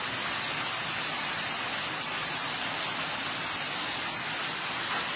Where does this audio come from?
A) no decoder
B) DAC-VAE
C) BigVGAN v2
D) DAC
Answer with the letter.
A